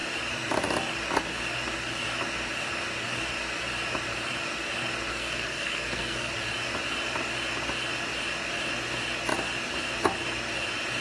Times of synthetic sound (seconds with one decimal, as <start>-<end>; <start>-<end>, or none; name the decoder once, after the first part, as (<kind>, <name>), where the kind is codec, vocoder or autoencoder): 5.1-6.3 (codec, SNAC)